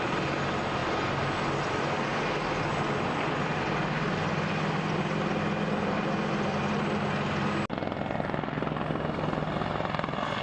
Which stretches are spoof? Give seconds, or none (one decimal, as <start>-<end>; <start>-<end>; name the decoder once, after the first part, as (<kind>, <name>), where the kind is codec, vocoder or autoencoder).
none